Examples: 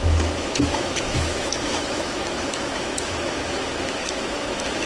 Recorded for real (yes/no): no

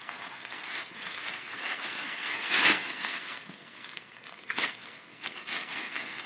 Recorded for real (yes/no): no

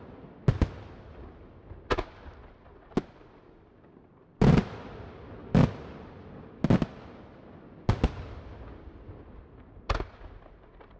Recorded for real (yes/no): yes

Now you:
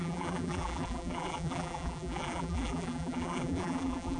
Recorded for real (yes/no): no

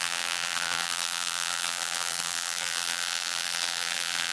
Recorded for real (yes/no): no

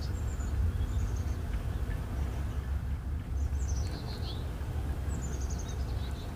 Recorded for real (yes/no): yes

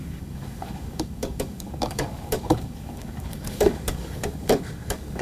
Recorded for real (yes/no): no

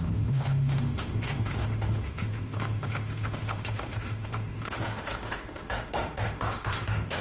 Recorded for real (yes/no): no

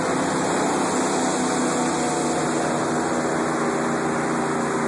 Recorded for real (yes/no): yes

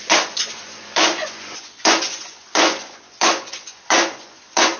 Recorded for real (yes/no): no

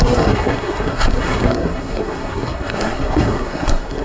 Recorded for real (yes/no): no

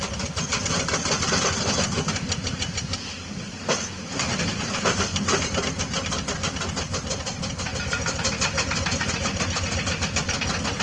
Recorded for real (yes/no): yes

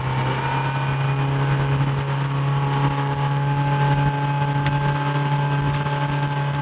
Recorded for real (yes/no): yes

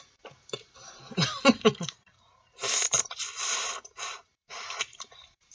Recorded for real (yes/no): no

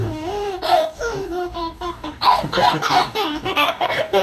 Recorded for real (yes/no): no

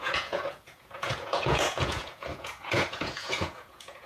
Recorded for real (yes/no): no